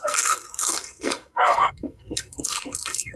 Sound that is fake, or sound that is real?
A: fake